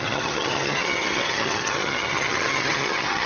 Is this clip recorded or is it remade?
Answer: remade